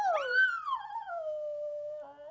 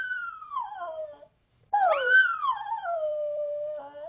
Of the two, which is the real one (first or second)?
first